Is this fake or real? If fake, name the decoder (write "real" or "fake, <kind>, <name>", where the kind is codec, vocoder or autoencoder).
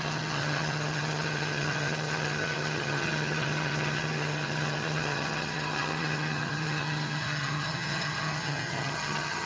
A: fake, vocoder, HiFi-GAN